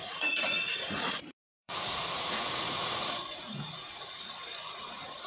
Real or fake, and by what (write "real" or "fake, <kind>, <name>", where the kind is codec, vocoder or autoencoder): fake, vocoder, Vocos